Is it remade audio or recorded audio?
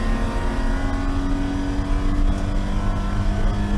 recorded